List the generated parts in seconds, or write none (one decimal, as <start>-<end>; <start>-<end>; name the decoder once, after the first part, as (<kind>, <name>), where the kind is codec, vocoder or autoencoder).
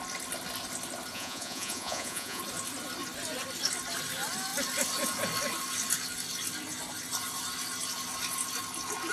1.1-2.4 (vocoder, Vocos)